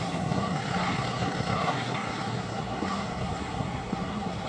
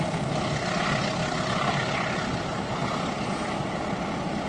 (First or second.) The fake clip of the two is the first